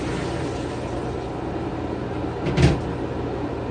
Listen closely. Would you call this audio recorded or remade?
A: recorded